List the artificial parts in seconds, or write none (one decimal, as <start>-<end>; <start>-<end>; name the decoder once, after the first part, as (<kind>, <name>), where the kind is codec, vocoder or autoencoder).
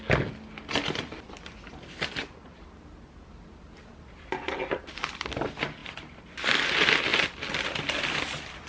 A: none